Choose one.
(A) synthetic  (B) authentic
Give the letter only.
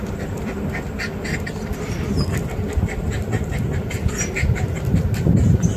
B